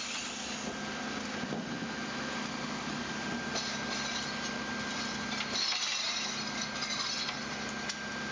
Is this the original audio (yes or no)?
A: yes